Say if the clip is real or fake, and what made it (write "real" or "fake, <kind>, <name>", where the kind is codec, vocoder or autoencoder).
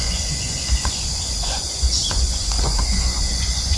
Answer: fake, vocoder, Vocos